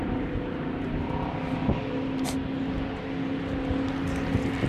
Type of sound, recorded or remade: recorded